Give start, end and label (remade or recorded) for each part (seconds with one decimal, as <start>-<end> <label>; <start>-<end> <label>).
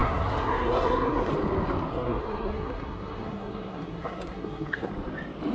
0.0-1.3 remade; 1.3-1.9 recorded; 1.9-4.9 remade; 4.9-5.5 recorded